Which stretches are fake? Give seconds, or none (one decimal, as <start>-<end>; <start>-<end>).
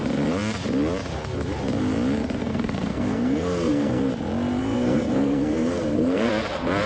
2.4-4.1; 4.6-6.3